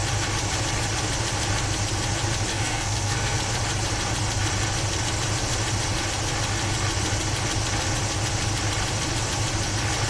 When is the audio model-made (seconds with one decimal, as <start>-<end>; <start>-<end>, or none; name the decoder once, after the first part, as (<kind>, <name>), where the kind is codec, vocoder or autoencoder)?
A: 2.5-3.4 (codec, SNAC)